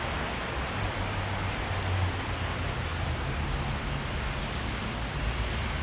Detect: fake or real real